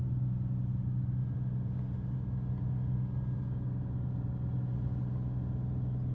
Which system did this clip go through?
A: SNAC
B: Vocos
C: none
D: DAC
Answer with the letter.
C